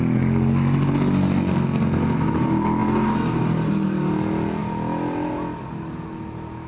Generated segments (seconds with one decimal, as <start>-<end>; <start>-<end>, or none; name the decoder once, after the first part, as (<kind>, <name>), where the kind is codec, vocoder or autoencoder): none